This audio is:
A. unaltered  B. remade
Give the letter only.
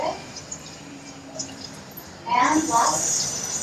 B